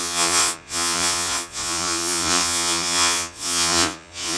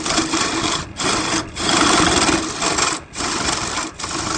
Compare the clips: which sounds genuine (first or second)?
second